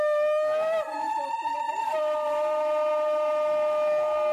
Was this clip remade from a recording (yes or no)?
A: no